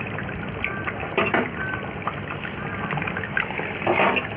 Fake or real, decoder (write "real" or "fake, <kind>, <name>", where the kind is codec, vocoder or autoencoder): real